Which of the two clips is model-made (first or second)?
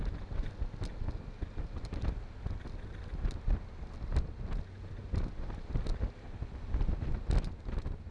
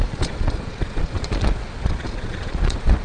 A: second